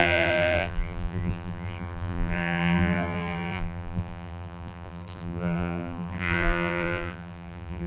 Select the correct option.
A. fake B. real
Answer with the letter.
A